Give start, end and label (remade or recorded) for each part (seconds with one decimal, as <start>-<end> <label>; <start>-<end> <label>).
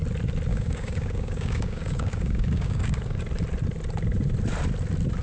0.0-0.5 recorded; 0.5-3.2 remade; 3.2-5.2 recorded